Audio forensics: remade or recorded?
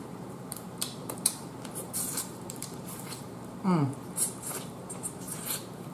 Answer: remade